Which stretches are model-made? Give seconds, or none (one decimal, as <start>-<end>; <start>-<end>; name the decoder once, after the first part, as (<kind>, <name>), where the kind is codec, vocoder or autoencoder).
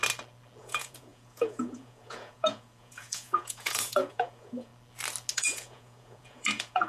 0.6-4.7 (vocoder, Vocos); 5.3-6.9